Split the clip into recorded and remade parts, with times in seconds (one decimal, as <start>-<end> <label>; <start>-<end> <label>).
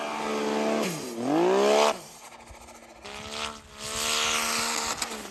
0.0-5.3 recorded